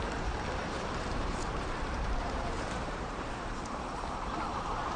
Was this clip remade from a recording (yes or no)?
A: yes